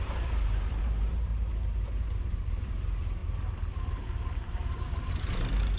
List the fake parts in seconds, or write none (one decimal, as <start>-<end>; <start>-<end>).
0.0-1.3; 2.0-3.2; 5.1-5.8